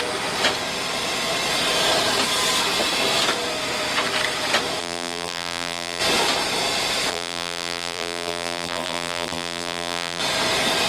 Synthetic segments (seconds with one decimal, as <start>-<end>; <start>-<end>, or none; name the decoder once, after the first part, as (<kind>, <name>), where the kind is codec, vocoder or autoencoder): 4.8-6.0 (vocoder, BigVGAN v2); 7.1-10.2